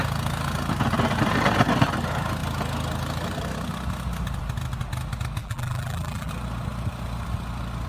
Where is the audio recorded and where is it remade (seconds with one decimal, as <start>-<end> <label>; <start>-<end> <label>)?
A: 0.0-5.4 recorded; 5.4-6.3 remade; 6.3-7.9 recorded